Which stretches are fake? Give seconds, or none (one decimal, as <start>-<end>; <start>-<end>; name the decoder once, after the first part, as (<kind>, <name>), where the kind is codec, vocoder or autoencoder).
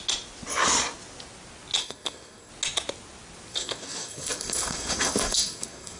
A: 1.8-2.5 (codec, SNAC); 3.5-6.0